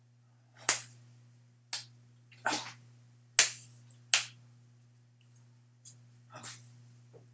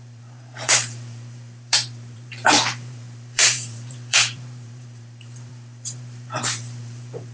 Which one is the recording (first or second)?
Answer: first